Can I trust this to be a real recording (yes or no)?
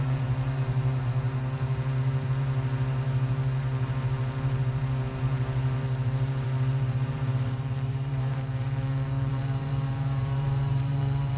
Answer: no